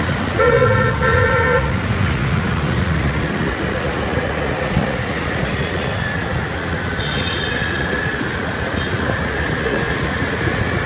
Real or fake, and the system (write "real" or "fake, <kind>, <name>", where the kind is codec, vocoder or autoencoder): fake, vocoder, Vocos